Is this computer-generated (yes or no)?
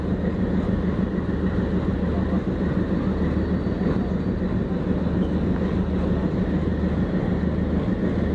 no